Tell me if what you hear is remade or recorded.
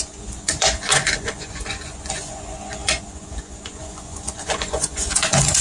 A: remade